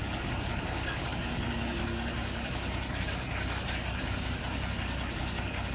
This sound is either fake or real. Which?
fake